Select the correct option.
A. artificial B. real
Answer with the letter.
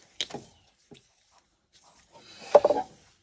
B